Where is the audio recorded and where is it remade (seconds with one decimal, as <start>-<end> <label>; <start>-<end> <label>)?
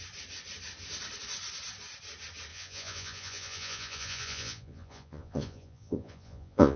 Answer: 0.0-2.5 recorded; 2.5-6.8 remade